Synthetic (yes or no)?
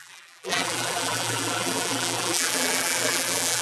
yes